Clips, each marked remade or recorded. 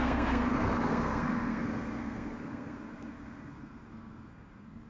remade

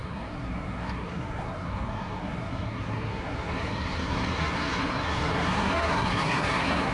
remade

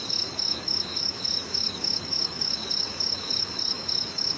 remade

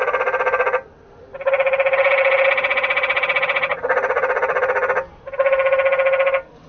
recorded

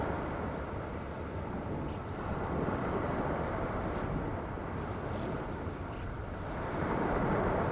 remade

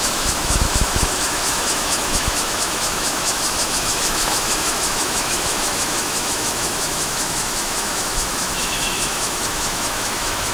remade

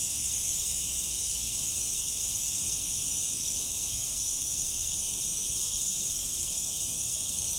remade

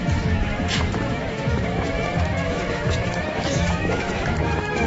remade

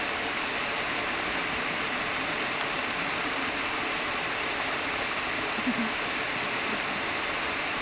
recorded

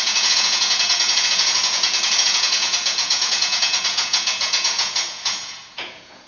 remade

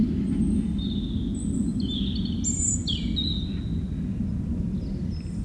recorded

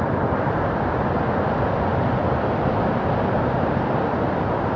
remade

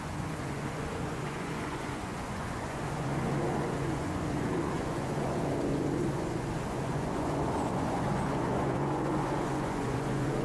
remade